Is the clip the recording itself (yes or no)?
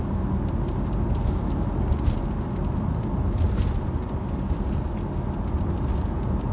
yes